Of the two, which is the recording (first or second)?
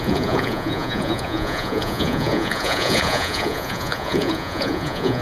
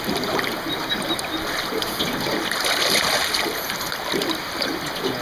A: second